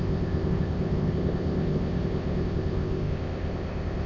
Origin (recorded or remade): remade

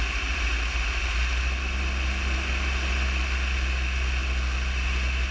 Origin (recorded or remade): recorded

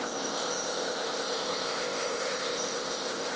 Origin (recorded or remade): remade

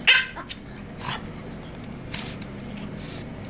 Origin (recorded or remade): recorded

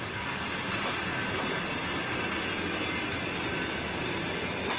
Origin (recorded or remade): recorded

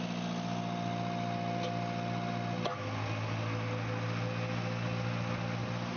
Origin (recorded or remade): recorded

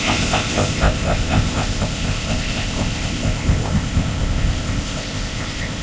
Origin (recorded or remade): remade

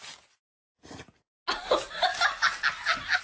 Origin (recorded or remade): recorded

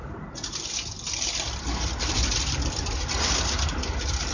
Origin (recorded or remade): recorded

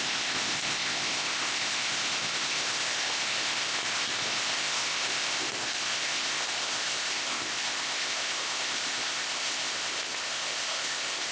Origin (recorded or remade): remade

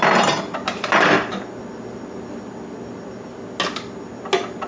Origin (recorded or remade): recorded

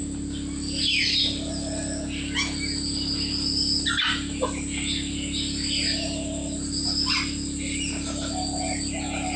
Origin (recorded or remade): recorded